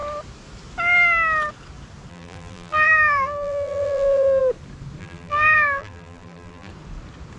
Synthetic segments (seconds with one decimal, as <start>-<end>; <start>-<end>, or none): 2.1-4.4; 5.0-6.7